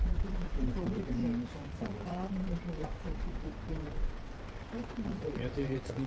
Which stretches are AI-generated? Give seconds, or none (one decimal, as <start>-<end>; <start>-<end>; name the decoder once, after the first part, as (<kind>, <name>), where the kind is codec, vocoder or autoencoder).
0.0-1.2 (vocoder, WaveNeXt); 1.7-6.1